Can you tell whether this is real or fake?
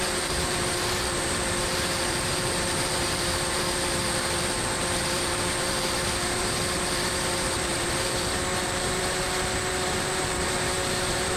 fake